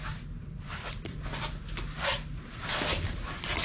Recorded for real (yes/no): yes